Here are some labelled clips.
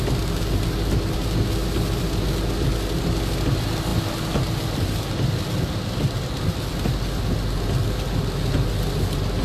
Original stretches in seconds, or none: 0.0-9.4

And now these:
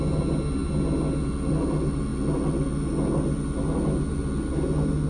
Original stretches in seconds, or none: 0.0-5.1